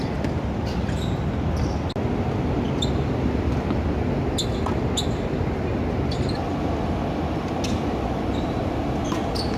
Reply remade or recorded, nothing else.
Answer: recorded